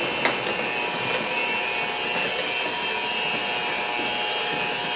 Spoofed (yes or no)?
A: no